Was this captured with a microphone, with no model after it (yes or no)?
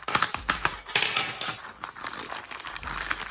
no